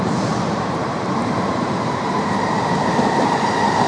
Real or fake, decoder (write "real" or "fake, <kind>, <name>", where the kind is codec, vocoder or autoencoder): fake, vocoder, BigVGAN v2